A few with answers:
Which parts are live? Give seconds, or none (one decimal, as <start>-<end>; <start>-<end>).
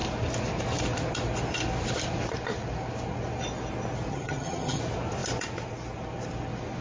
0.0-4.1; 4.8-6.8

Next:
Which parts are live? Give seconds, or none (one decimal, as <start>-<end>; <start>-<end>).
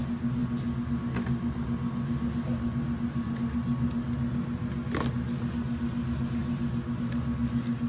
0.0-7.9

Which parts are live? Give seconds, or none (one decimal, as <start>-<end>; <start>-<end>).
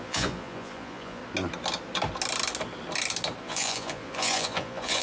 1.2-3.4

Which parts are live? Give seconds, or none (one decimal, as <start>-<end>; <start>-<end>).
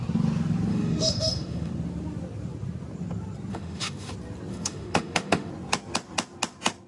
0.0-0.7; 1.7-3.5; 4.1-4.5; 5.5-6.9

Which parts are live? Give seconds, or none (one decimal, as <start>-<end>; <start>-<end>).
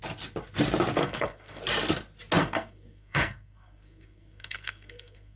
0.0-1.0; 1.6-2.4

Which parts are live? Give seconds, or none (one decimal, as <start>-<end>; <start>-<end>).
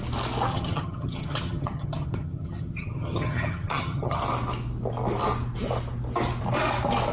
0.0-0.5; 4.2-7.1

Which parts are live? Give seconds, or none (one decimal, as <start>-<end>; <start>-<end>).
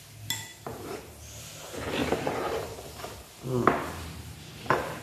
0.0-0.5; 1.1-2.0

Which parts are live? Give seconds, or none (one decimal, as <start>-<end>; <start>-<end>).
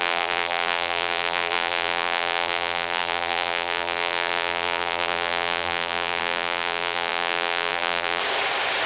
8.2-8.9